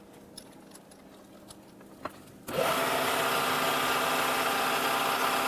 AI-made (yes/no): no